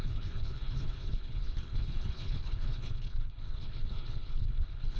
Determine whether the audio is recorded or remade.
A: remade